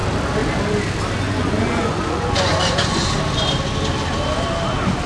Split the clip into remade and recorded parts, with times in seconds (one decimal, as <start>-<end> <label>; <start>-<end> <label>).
0.0-1.4 recorded; 1.4-3.0 remade; 3.0-5.1 recorded

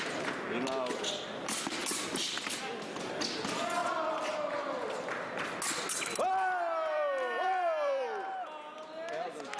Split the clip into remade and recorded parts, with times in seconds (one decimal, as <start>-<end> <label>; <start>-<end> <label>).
0.0-1.8 recorded; 1.8-2.6 remade; 2.6-3.8 recorded; 3.8-4.5 remade; 4.5-9.6 recorded

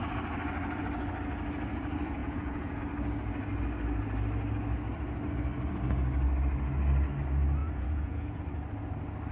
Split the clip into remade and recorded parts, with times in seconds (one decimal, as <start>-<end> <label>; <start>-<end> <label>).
0.0-2.2 recorded; 2.2-2.8 remade; 2.8-7.6 recorded; 7.6-8.4 remade; 8.4-9.3 recorded

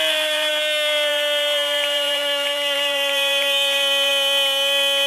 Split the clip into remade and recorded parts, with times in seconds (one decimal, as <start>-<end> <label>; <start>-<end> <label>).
0.0-0.5 remade; 0.5-1.1 recorded; 1.1-4.1 remade; 4.1-5.1 recorded

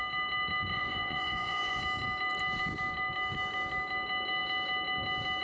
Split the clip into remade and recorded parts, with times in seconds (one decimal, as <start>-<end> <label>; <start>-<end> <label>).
0.0-0.7 recorded; 0.7-1.8 remade; 1.8-5.4 recorded

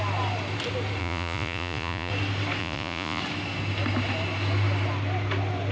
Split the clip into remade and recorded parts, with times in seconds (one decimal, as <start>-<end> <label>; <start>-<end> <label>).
0.0-1.0 recorded; 1.0-2.1 remade; 2.1-2.6 recorded; 2.6-3.2 remade; 3.2-5.7 recorded

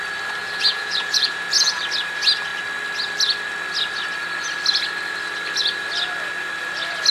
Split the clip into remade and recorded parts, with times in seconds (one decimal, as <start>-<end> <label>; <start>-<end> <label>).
0.0-0.4 recorded; 0.4-1.8 remade; 1.8-7.1 recorded